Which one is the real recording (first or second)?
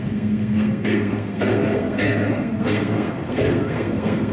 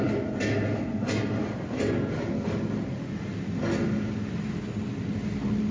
second